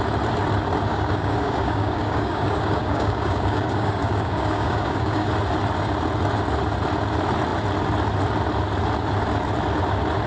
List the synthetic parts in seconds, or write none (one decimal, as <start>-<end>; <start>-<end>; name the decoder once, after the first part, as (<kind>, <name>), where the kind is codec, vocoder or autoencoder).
0.9-5.3 (codec, DAC)